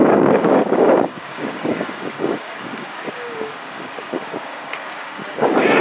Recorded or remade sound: remade